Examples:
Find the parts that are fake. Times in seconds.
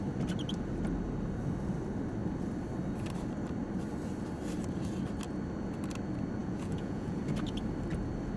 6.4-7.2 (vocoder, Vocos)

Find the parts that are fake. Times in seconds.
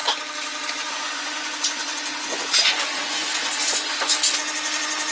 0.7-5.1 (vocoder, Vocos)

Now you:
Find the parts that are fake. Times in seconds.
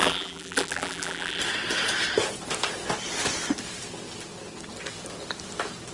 0.0-1.4 (vocoder, BigVGAN v2)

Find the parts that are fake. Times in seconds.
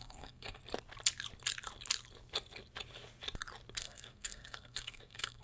0.0-0.6 (codec, SNAC); 3.8-5.4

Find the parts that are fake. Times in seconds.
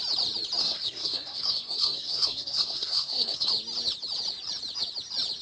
0.6-3.5 (codec, SNAC)